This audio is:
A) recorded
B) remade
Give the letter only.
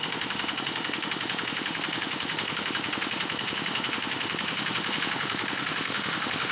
B